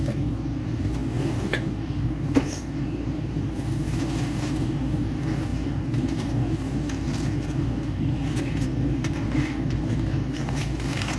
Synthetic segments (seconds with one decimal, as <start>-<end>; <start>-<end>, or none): 0.0-11.2